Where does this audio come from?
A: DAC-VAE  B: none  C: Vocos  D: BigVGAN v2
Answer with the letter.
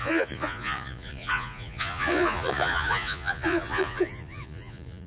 C